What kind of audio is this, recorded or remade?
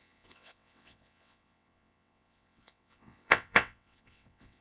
remade